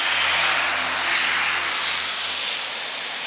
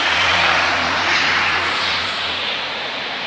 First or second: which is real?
first